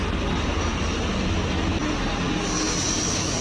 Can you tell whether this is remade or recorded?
recorded